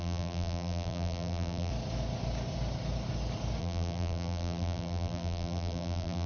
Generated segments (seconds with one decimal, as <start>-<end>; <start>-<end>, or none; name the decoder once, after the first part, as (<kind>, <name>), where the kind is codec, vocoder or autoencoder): 0.0-1.7 (vocoder, BigVGAN v2); 3.6-6.3